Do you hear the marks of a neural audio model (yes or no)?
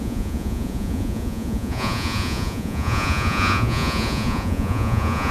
yes